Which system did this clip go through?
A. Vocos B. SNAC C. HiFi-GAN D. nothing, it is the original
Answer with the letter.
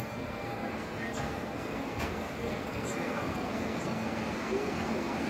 B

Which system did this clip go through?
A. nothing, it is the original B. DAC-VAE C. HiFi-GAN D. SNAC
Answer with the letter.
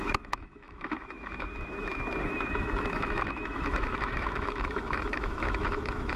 B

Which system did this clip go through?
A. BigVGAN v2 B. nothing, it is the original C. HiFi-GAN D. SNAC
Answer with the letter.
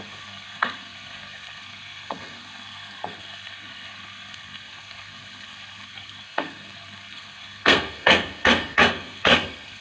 D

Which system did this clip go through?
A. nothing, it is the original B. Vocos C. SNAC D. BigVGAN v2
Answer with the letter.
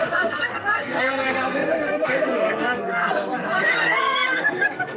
C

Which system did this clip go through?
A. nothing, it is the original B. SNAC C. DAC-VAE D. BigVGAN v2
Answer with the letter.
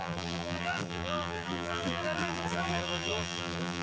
D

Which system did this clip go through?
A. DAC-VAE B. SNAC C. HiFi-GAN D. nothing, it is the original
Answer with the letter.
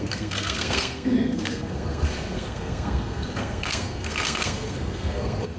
B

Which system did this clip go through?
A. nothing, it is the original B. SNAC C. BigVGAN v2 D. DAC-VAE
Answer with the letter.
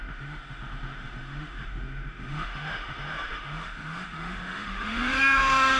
D